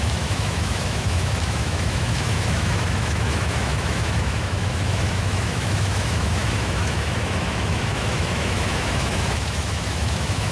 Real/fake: fake